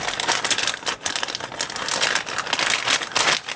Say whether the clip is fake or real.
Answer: real